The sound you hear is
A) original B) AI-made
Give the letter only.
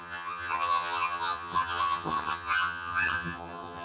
B